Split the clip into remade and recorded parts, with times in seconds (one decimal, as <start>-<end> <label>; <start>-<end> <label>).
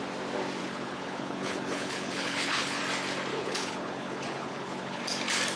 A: 0.0-0.6 recorded; 0.6-2.8 remade; 2.8-3.3 recorded; 3.3-5.0 remade; 5.0-5.6 recorded